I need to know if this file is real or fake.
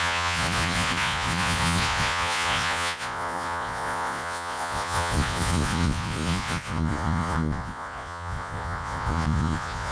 fake